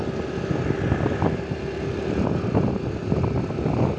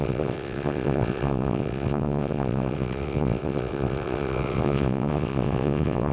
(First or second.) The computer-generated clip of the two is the second